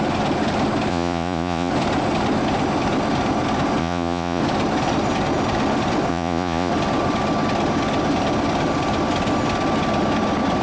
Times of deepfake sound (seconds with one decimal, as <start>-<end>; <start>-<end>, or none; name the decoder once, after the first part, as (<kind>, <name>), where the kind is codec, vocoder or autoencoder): 0.9-1.7 (vocoder, Vocos); 3.8-4.4; 6.1-6.7